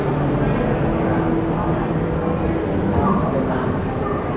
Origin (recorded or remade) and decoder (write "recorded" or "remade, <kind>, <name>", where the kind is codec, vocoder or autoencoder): recorded